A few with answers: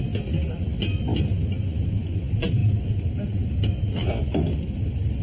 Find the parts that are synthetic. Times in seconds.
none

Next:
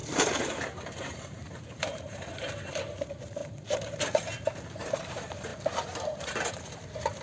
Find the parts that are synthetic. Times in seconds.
0.0-7.2 (vocoder, BigVGAN v2)

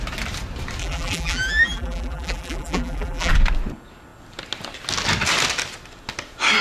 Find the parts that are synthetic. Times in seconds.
0.8-3.3 (vocoder, BigVGAN v2)

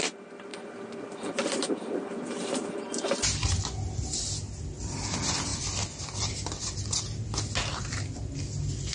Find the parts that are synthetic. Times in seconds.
0.5-3.6 (vocoder, BigVGAN v2); 5.5-7.0

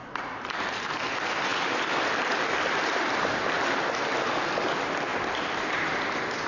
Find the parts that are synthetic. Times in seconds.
0.0-0.9 (vocoder, BigVGAN v2); 5.1-5.9

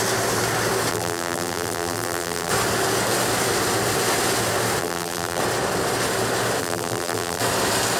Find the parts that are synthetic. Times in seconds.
0.9-2.5 (vocoder, BigVGAN v2); 4.8-5.4; 6.6-7.4

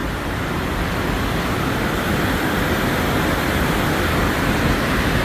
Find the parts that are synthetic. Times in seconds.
none